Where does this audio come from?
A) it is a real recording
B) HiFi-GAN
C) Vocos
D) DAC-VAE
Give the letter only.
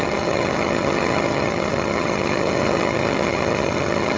B